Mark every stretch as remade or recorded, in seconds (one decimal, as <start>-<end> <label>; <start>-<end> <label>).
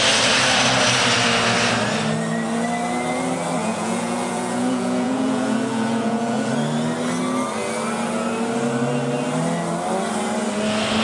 0.0-3.6 recorded; 3.6-6.5 remade; 6.5-11.0 recorded